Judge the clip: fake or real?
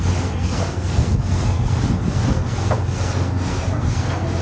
fake